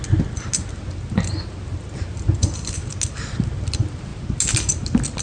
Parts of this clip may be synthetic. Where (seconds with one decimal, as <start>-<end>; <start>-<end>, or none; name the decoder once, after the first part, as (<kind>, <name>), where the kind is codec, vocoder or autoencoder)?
none